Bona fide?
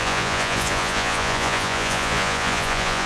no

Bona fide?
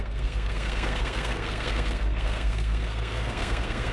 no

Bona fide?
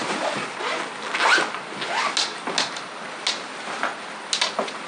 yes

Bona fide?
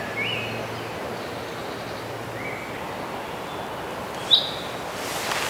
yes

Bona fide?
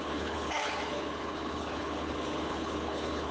no